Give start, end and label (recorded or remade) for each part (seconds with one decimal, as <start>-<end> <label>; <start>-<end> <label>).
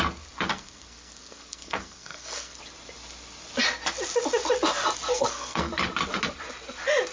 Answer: 0.0-0.5 recorded; 0.5-2.6 remade; 2.6-5.1 recorded; 5.1-5.7 remade; 5.7-7.1 recorded